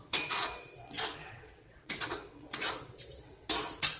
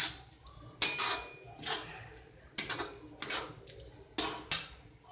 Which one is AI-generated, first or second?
first